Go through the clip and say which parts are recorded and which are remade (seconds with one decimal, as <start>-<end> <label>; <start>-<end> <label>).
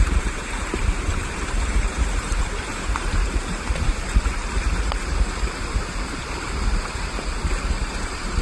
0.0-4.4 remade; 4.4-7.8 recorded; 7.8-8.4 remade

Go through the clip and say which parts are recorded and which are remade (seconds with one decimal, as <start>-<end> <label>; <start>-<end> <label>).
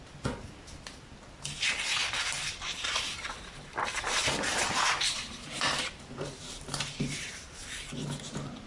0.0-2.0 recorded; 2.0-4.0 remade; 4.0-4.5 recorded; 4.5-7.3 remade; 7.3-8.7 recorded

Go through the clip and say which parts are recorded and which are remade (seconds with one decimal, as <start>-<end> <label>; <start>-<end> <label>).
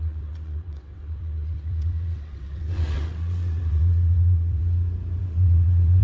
0.0-4.6 remade; 4.6-5.2 recorded; 5.2-6.0 remade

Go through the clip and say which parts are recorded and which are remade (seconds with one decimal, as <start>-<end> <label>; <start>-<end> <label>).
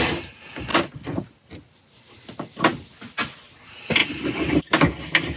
0.0-0.7 recorded; 0.7-1.5 remade; 1.5-4.0 recorded; 4.0-4.5 remade; 4.5-5.4 recorded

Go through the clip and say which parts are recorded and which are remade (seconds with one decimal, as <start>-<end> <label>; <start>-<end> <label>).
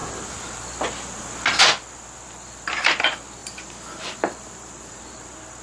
0.0-3.4 recorded; 3.4-5.0 remade; 5.0-5.6 recorded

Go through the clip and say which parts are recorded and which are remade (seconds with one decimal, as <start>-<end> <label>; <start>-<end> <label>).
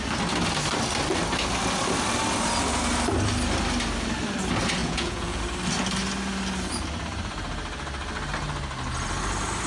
0.0-4.8 recorded; 4.8-5.4 remade; 5.4-9.7 recorded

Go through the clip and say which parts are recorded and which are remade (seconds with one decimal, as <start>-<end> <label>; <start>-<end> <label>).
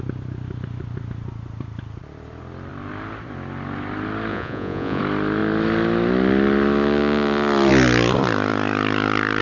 0.0-4.3 recorded; 4.3-5.0 remade; 5.0-9.4 recorded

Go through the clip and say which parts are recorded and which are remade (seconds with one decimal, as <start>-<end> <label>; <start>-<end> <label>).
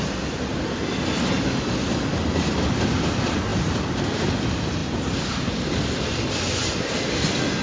0.0-7.6 recorded